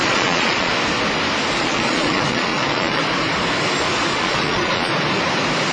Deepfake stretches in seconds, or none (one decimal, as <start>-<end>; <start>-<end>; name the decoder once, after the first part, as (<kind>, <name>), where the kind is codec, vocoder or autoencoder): 0.0-0.7 (vocoder, Vocos); 1.6-3.0; 4.1-4.9